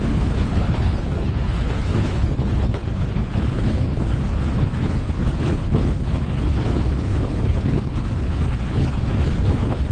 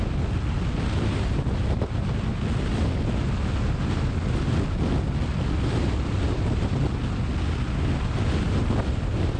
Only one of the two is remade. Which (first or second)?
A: first